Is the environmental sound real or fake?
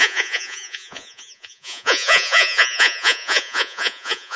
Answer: fake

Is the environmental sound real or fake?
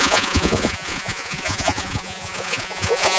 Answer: fake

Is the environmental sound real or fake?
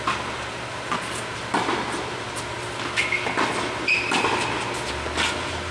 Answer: real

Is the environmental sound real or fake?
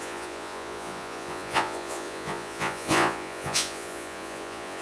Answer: fake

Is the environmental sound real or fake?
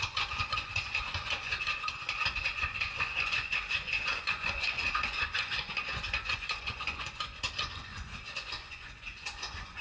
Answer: fake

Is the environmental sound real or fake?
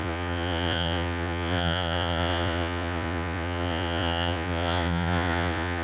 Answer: fake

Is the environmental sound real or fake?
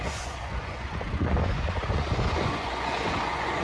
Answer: fake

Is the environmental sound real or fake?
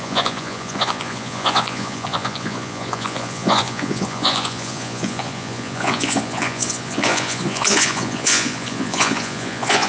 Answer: fake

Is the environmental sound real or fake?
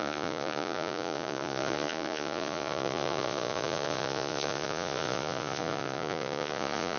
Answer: fake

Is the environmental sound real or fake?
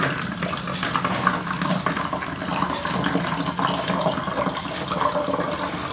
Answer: real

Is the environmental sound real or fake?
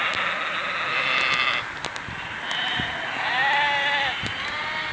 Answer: real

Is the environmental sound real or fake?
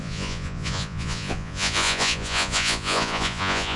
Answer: fake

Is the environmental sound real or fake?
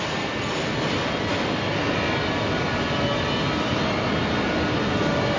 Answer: real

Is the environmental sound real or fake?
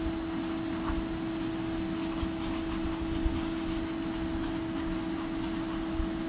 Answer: real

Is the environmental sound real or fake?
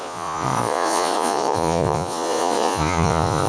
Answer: fake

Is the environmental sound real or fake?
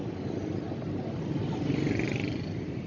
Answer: real